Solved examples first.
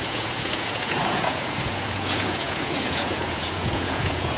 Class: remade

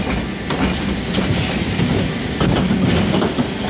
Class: recorded